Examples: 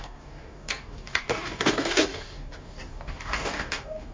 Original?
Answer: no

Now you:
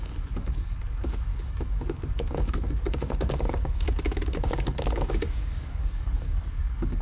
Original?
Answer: no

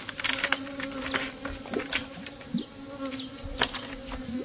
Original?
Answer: yes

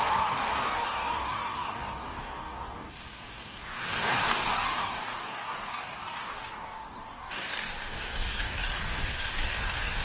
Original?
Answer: no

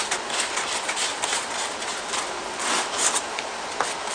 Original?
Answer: yes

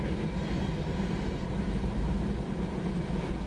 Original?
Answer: yes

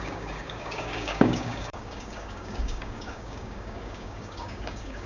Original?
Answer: no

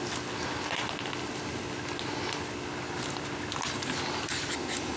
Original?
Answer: yes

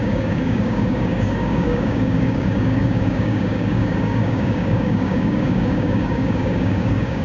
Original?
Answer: no